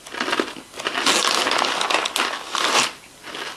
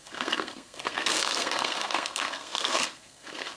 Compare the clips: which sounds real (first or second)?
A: first